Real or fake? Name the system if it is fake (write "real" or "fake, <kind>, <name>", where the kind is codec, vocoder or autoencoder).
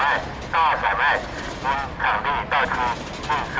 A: real